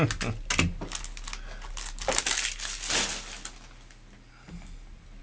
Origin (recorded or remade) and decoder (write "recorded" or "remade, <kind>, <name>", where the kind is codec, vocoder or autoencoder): recorded